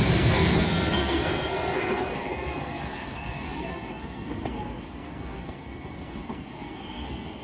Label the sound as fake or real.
fake